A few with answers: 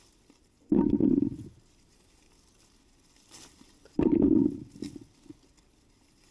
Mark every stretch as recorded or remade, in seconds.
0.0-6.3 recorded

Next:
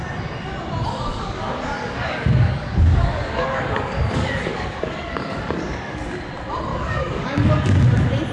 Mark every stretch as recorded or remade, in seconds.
0.0-1.1 recorded; 1.1-6.0 remade; 6.0-6.7 recorded; 6.7-7.8 remade; 7.8-8.3 recorded

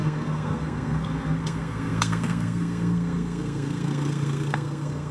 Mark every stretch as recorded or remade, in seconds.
0.0-5.1 remade

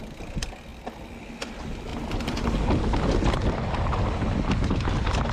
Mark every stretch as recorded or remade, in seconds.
0.0-5.3 recorded